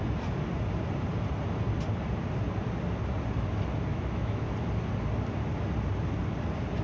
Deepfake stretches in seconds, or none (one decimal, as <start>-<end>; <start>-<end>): 3.9-4.5